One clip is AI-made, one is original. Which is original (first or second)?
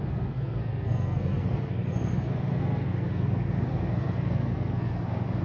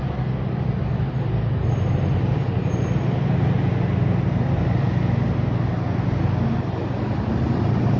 second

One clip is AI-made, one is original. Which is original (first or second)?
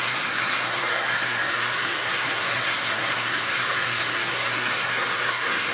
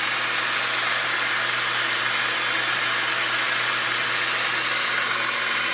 second